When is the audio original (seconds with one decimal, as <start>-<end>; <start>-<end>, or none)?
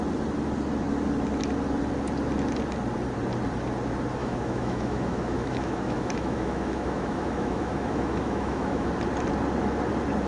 0.0-4.2; 8.9-10.3